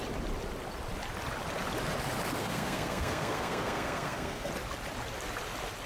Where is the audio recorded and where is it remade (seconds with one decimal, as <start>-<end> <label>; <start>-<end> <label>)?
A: 0.0-2.4 recorded; 2.4-4.5 remade; 4.5-5.9 recorded